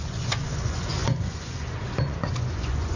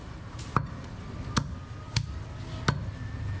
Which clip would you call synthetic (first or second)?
first